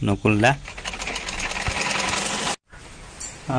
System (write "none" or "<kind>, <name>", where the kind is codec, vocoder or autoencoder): none